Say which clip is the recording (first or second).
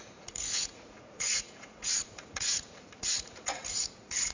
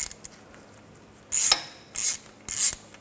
second